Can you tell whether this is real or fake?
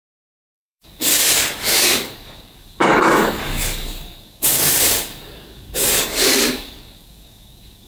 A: fake